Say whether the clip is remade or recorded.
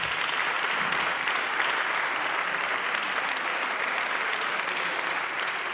recorded